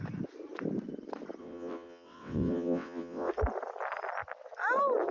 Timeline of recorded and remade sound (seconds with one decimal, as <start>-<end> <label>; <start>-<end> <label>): 0.0-1.4 recorded; 1.4-3.3 remade; 3.3-5.1 recorded